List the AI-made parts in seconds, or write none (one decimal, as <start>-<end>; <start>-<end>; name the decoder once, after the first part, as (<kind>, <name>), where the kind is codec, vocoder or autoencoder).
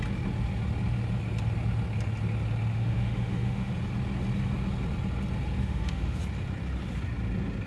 2.7-3.7 (autoencoder, DAC-VAE); 5.6-6.2